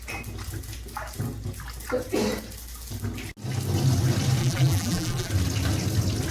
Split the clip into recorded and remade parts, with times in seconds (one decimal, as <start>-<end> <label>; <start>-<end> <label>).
0.0-4.4 recorded; 4.4-5.3 remade; 5.3-6.3 recorded

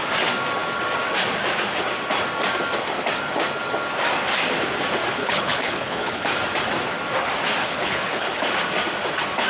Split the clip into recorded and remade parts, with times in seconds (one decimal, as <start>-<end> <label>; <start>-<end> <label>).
0.0-5.2 recorded; 5.2-6.4 remade; 6.4-7.6 recorded; 7.6-8.3 remade; 8.3-9.5 recorded

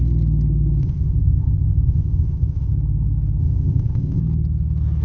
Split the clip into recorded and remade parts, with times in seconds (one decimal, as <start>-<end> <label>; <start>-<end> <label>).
0.0-0.8 recorded; 0.8-2.7 remade; 2.7-3.4 recorded; 3.4-4.2 remade; 4.2-5.0 recorded

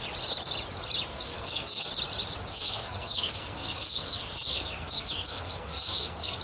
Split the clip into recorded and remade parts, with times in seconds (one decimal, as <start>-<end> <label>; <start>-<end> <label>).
0.0-1.1 recorded; 1.1-1.9 remade; 1.9-2.5 recorded; 2.5-6.4 remade

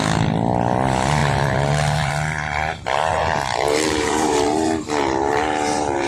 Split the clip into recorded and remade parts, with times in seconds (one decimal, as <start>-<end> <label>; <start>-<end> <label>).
0.0-1.2 recorded; 1.2-2.1 remade; 2.1-3.1 recorded; 3.1-6.1 remade

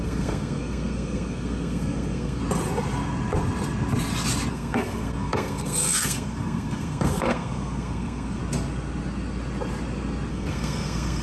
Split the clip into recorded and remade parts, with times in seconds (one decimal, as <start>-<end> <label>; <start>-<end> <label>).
0.0-2.4 remade; 2.4-4.5 recorded; 4.5-8.4 remade; 8.4-10.3 recorded; 10.3-11.2 remade

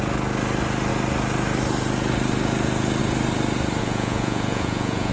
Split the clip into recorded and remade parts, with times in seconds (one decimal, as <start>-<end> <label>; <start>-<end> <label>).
0.0-3.8 recorded; 3.8-5.1 remade

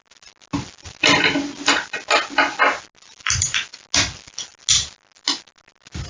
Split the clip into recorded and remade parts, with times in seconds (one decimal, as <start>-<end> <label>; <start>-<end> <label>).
0.0-6.1 recorded